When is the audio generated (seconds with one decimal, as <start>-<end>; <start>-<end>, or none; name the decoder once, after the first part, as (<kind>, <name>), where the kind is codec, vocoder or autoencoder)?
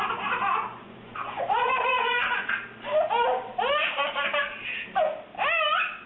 0.7-2.5 (vocoder, Vocos)